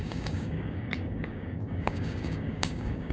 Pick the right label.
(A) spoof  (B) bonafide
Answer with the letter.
A